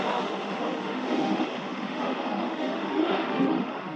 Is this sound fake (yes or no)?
yes